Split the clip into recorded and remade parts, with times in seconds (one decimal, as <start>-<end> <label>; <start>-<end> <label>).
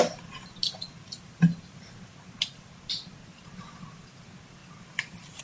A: 0.0-5.4 recorded